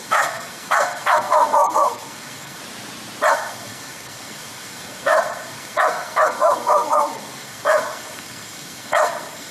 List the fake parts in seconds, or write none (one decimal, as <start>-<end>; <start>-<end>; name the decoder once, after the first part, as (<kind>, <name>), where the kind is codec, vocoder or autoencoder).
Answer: 0.0-2.6 (codec, SNAC); 3.3-9.5

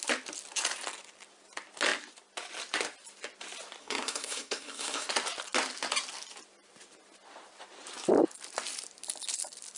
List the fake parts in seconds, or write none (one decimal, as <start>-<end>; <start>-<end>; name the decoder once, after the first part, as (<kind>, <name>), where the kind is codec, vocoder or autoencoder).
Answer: 3.8-5.1 (codec, SNAC)

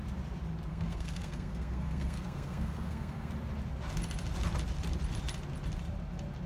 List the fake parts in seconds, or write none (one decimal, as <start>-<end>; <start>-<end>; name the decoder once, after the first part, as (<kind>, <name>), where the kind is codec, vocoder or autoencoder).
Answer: 0.7-3.3 (codec, SNAC)

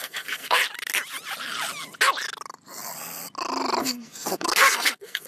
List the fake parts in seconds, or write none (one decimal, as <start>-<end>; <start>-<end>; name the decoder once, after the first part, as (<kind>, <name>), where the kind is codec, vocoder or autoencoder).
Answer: 0.0-0.6 (codec, SNAC); 3.8-5.3

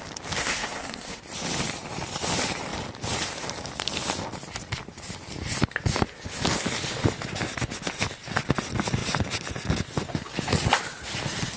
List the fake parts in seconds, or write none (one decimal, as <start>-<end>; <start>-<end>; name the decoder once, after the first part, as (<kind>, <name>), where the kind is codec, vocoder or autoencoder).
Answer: 0.4-1.2 (codec, SNAC)

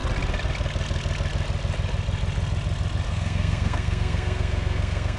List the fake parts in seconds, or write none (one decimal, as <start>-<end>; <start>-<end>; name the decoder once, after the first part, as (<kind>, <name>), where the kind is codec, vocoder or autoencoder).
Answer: 3.1-5.2 (codec, SNAC)

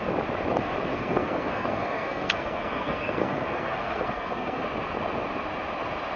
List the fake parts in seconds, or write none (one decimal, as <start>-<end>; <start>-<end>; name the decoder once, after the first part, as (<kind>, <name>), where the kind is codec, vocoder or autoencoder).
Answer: 0.9-4.6 (codec, SNAC)